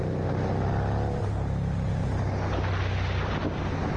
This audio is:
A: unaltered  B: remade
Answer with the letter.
A